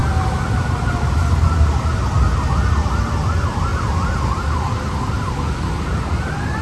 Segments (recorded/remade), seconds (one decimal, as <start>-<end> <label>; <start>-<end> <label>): 0.0-6.6 recorded